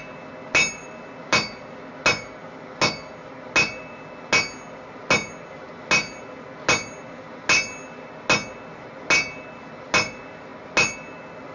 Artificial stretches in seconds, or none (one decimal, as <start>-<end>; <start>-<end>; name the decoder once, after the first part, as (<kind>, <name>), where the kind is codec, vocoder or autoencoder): none